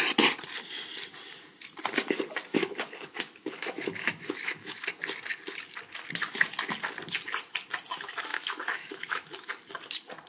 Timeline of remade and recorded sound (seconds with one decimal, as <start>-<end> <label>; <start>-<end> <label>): 0.0-2.5 recorded; 2.5-4.8 remade; 4.8-8.3 recorded; 8.3-9.5 remade; 9.5-10.3 recorded